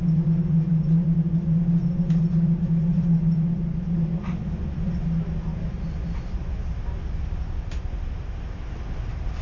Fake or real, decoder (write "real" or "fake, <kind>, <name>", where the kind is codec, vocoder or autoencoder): real